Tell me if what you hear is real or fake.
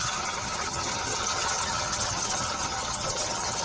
fake